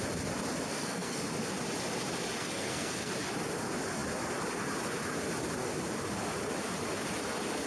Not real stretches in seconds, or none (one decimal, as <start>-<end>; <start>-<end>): 0.7-1.2; 2.4-3.1